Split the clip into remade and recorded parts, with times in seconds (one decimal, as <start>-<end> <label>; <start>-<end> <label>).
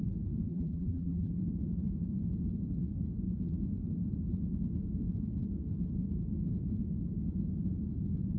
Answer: 0.0-0.5 recorded; 0.5-1.3 remade; 1.3-8.4 recorded